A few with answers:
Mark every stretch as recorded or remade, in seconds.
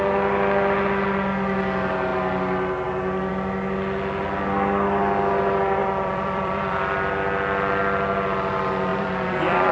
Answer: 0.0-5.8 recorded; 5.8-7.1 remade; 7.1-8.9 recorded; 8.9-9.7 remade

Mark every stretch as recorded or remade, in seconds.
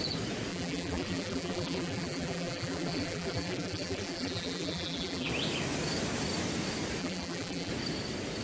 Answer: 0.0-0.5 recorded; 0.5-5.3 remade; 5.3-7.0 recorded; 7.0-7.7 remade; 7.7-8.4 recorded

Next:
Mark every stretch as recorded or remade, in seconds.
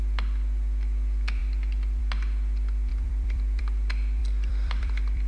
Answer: 0.0-1.4 recorded; 1.4-2.0 remade; 2.0-2.9 recorded; 2.9-3.6 remade; 3.6-4.2 recorded; 4.2-5.3 remade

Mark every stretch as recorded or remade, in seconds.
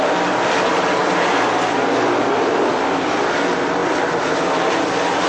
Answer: 0.0-3.8 recorded; 3.8-4.5 remade; 4.5-5.3 recorded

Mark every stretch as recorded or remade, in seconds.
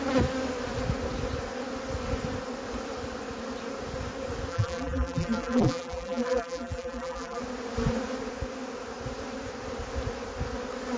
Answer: 0.0-4.5 recorded; 4.5-7.4 remade; 7.4-11.0 recorded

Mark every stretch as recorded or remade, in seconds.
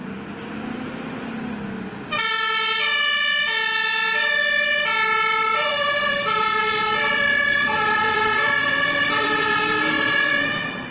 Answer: 0.0-5.4 recorded; 5.4-10.3 remade; 10.3-10.9 recorded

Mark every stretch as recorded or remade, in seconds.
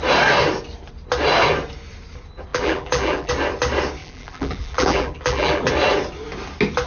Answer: 0.0-2.5 recorded; 2.5-3.3 remade; 3.3-4.0 recorded; 4.0-5.7 remade; 5.7-6.9 recorded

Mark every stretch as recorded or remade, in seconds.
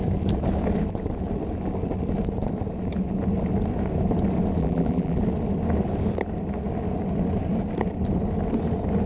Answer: 0.0-4.6 recorded; 4.6-5.2 remade; 5.2-9.1 recorded